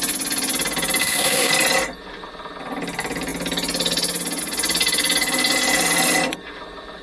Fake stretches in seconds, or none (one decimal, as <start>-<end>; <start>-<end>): 1.0-1.5